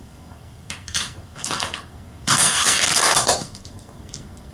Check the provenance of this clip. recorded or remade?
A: remade